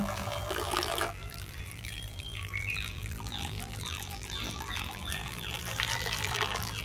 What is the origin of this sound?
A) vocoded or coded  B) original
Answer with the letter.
A